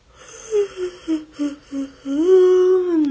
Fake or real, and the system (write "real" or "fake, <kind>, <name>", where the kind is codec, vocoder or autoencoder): real